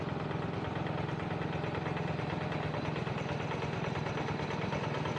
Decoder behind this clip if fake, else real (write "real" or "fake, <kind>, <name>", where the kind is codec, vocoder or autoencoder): real